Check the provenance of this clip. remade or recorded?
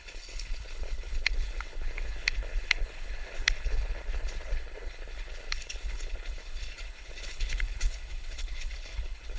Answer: remade